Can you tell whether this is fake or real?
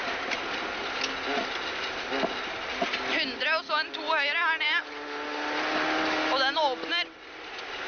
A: real